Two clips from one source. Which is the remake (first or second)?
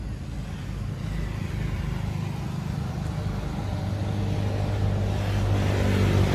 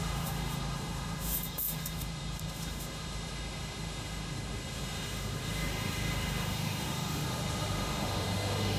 second